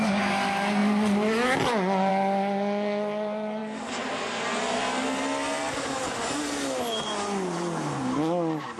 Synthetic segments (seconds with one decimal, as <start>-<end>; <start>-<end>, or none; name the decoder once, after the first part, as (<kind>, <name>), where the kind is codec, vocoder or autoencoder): none